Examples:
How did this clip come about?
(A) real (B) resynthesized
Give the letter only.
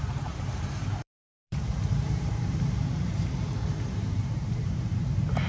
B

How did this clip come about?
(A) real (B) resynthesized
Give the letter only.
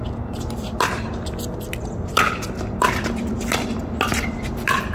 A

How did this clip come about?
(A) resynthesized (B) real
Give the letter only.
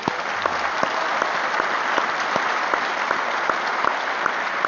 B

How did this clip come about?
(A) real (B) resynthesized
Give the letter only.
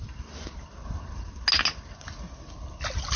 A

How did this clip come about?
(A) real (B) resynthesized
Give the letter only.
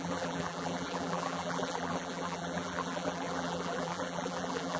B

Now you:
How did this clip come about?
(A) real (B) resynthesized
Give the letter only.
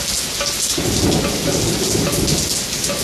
A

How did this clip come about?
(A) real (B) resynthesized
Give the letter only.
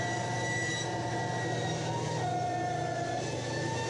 A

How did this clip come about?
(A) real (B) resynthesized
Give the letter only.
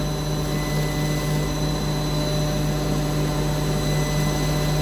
A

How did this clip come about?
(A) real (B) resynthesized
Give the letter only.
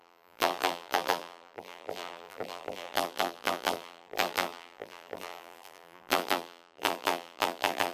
B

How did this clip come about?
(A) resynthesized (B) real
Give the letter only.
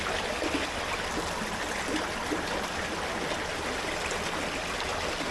B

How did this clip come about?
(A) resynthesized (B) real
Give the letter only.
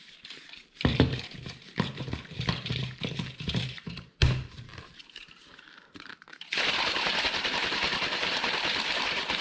A